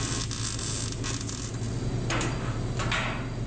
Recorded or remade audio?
recorded